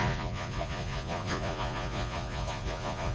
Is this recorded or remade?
remade